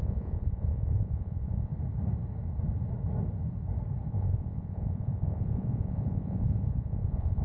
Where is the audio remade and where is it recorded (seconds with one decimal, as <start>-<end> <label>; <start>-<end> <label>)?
0.0-1.7 remade; 1.7-4.1 recorded; 4.1-7.4 remade